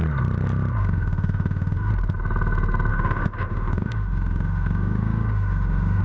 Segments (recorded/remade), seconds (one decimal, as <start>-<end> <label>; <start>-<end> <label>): 0.0-0.8 recorded; 0.8-1.9 remade; 1.9-2.9 recorded; 2.9-6.0 remade